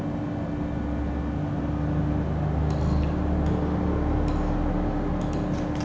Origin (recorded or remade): recorded